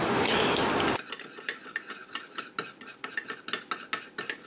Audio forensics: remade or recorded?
recorded